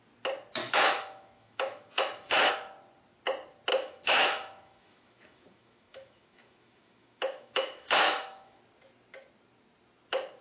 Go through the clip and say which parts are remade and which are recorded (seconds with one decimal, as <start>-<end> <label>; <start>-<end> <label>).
0.0-0.6 recorded; 0.6-2.5 remade; 2.5-3.7 recorded; 3.7-8.6 remade; 8.6-10.4 recorded